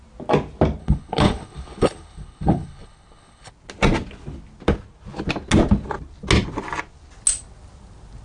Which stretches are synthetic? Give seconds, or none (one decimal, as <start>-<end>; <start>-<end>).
0.8-3.5